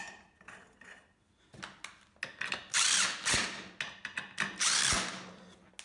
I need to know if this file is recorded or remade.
recorded